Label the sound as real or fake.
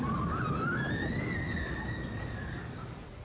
real